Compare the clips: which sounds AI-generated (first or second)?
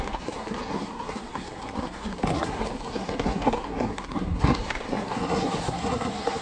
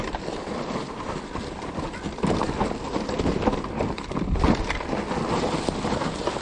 first